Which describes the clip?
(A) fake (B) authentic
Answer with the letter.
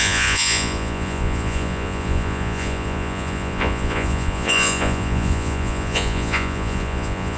A